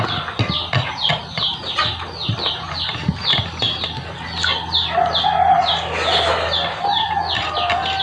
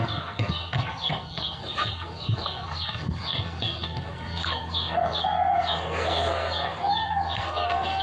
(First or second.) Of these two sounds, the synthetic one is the second